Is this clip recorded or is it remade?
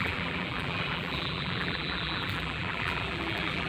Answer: remade